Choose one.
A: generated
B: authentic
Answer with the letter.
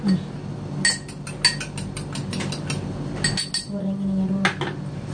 B